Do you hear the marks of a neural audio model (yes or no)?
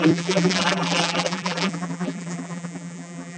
yes